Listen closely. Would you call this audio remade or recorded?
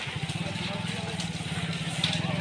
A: recorded